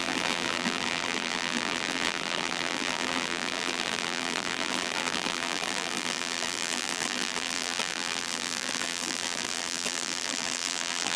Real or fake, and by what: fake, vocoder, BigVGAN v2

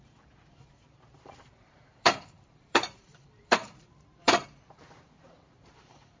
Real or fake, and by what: fake, vocoder, BigVGAN v2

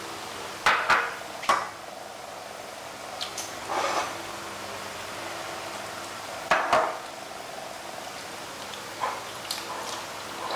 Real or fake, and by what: real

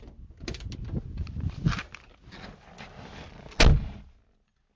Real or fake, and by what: real